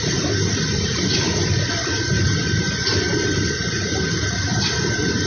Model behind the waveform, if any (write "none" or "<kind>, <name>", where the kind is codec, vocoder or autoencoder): none